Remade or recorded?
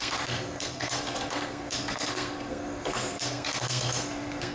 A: remade